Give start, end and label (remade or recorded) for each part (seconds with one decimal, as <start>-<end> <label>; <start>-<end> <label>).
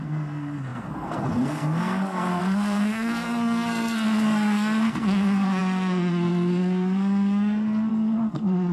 0.0-8.7 remade